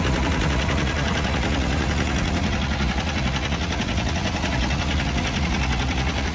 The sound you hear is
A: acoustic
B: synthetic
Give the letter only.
B